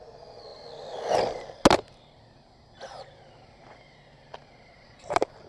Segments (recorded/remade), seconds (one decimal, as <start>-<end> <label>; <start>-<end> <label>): 0.0-5.5 recorded